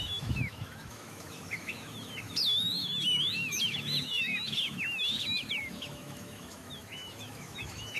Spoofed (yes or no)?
yes